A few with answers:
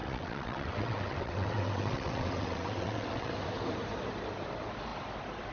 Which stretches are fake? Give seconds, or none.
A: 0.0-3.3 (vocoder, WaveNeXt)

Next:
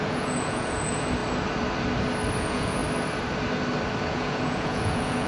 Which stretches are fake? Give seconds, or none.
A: 0.0-1.2 (vocoder, Vocos); 2.4-2.8; 4.1-5.3

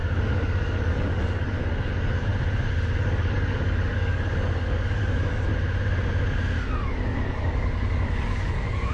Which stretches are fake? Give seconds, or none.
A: 0.0-2.3 (codec, DAC); 3.0-5.5; 6.6-8.9

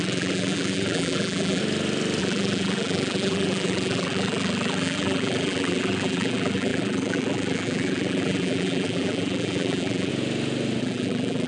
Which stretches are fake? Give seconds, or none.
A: 0.0-1.6 (vocoder, BigVGAN v2); 2.2-10.1; 10.8-11.5

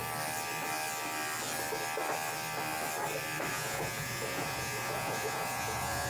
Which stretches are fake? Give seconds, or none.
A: 3.5-6.1 (vocoder, Vocos)

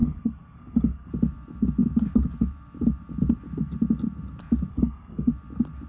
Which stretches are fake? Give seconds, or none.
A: 0.0-1.1 (codec, SNAC); 4.7-5.3